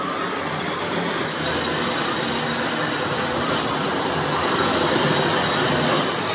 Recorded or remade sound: recorded